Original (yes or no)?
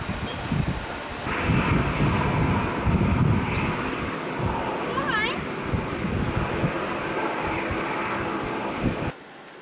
yes